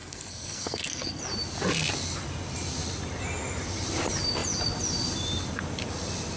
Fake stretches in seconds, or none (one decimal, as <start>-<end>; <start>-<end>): 0.0-1.2